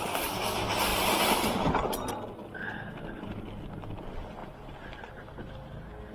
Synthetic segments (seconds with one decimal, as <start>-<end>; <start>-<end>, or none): none